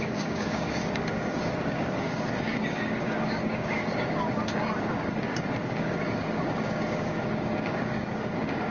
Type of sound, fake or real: fake